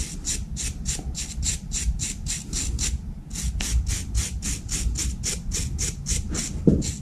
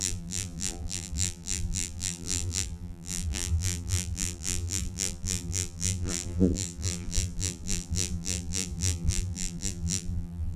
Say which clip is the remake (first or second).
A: second